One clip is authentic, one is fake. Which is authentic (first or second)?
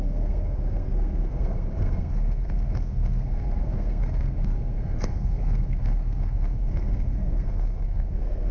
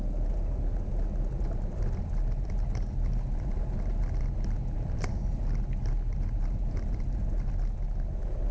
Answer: second